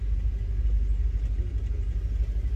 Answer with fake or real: real